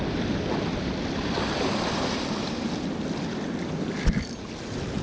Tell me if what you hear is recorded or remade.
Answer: recorded